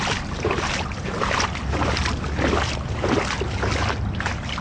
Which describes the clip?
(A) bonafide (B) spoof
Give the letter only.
A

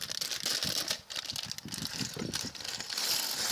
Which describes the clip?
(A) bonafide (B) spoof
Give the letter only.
A